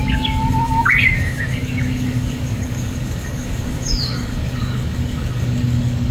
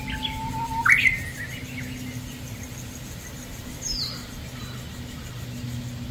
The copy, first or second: first